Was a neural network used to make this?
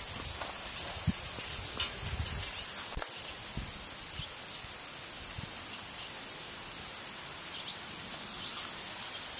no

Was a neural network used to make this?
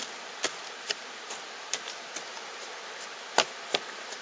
yes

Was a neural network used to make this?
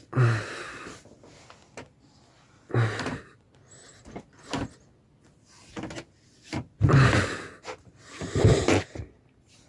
no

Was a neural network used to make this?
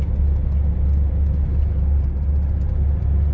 no